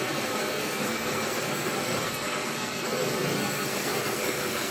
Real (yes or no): no